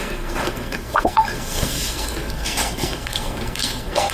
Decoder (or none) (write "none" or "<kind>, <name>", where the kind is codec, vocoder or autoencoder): codec, SNAC